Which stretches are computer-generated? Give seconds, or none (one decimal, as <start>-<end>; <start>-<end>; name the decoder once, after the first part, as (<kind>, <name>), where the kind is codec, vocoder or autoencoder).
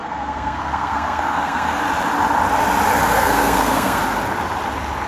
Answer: 0.0-1.8 (codec, SNAC); 3.0-4.0